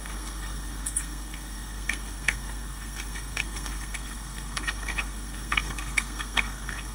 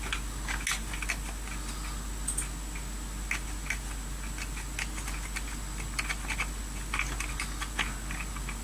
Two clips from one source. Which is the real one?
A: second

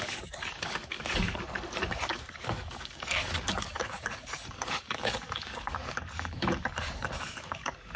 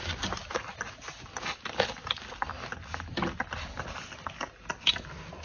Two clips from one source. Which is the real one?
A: second